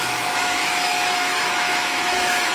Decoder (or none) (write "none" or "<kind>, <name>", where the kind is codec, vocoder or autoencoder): autoencoder, DAC-VAE